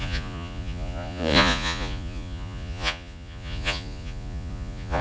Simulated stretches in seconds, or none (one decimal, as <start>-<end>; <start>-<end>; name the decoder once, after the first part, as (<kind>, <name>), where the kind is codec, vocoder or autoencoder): 0.0-5.0 (vocoder, Vocos)